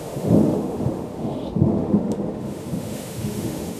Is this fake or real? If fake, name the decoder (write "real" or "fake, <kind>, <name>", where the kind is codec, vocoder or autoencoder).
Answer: fake, autoencoder, DAC-VAE